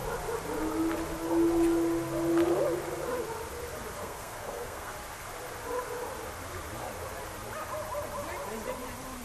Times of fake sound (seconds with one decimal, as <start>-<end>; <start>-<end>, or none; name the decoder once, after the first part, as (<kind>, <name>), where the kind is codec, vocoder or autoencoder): 4.0-4.9 (codec, SNAC)